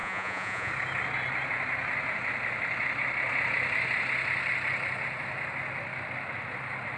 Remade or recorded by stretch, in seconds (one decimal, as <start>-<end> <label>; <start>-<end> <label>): 0.0-0.7 remade; 0.7-7.0 recorded